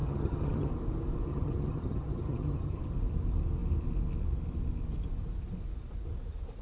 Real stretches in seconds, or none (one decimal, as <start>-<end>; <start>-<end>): 0.7-1.3; 2.8-6.6